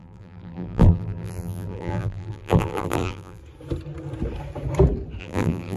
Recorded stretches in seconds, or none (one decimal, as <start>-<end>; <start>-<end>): 3.4-5.2